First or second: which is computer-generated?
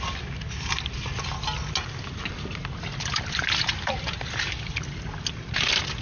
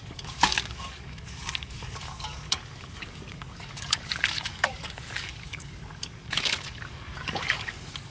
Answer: second